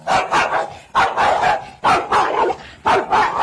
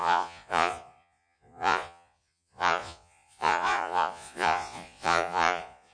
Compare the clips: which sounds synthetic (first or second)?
second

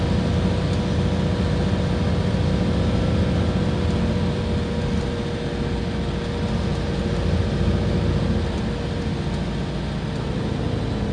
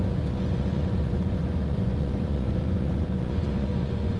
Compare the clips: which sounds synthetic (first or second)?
second